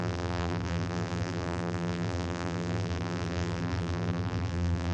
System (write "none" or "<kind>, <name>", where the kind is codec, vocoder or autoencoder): vocoder, BigVGAN v2